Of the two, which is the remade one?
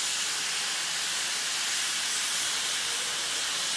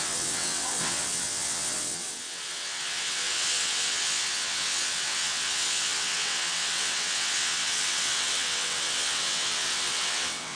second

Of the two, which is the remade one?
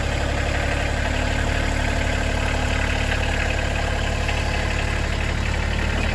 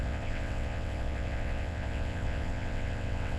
second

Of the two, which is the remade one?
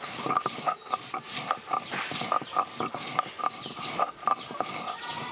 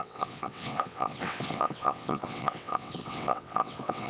second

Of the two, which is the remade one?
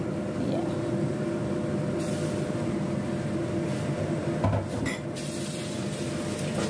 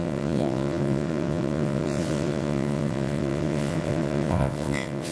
second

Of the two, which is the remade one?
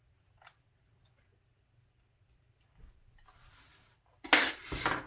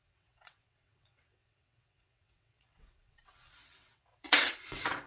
second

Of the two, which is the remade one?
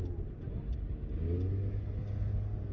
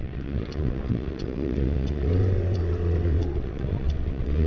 second